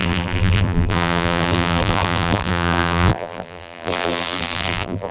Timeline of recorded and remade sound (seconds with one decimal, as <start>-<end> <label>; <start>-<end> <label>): 0.0-5.1 remade